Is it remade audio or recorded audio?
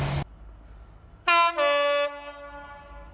recorded